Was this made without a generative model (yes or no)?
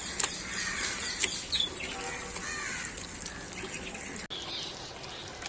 yes